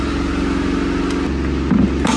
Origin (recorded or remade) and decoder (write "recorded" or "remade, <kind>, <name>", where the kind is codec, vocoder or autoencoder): recorded